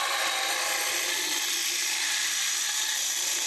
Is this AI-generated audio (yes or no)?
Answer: no